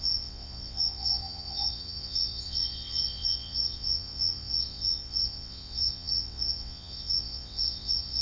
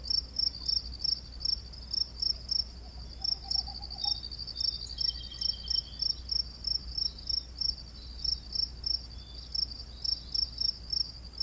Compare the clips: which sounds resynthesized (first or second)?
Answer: first